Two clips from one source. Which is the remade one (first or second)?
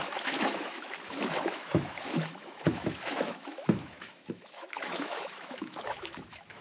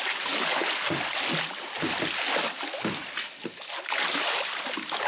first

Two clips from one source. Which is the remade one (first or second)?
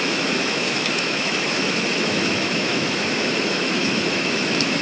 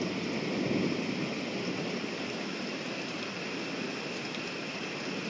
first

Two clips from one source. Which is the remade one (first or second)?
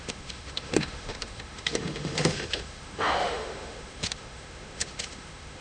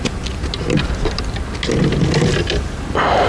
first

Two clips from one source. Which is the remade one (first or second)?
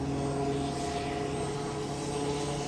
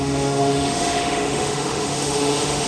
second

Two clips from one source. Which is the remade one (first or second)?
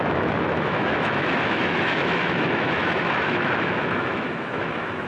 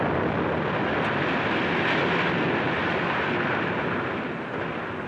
first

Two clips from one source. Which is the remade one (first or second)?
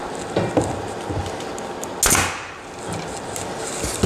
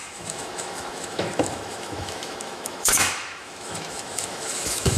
second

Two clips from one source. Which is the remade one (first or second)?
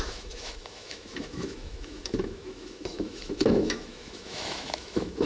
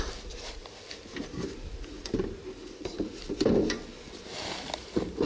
first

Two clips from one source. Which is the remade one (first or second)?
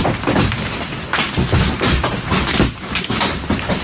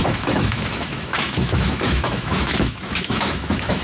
second